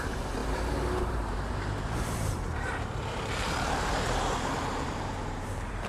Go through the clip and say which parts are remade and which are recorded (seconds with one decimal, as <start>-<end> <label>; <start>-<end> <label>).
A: 0.0-0.4 remade; 0.4-1.0 recorded; 1.0-5.9 remade